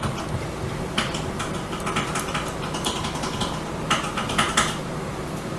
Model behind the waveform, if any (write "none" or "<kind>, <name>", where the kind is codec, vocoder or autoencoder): none